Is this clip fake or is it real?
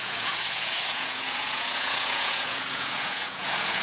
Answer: fake